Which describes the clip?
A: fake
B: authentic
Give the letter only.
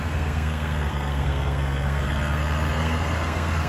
A